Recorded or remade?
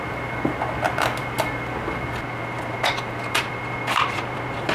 recorded